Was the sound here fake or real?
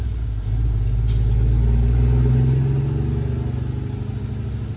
real